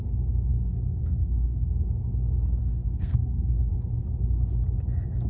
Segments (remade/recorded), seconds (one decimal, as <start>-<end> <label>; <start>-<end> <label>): 0.0-0.5 recorded; 0.5-1.7 remade; 1.7-2.6 recorded; 2.6-3.7 remade; 3.7-5.3 recorded